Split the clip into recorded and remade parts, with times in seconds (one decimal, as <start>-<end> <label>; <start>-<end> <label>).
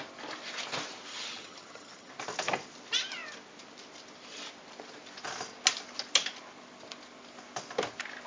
0.0-1.1 recorded; 1.1-2.1 remade; 2.1-8.3 recorded